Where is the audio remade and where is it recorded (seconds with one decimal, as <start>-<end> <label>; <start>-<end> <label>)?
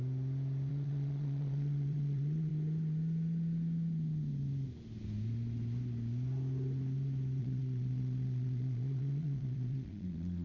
0.0-0.7 recorded; 0.7-2.5 remade; 2.5-7.4 recorded; 7.4-10.4 remade